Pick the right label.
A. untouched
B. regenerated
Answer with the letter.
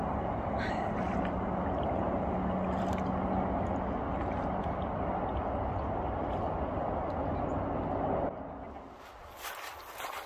A